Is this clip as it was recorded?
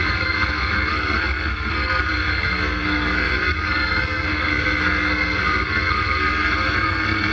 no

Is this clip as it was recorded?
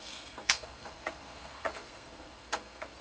no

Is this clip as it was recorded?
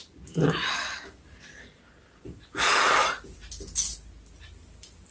yes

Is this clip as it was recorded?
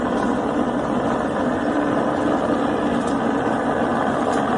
yes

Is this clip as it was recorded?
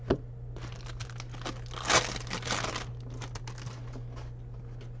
yes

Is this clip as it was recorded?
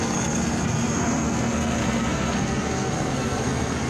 no